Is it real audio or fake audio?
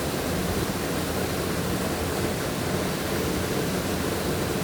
real